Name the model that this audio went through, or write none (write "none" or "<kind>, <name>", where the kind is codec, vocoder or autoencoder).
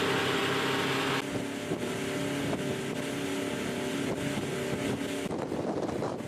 none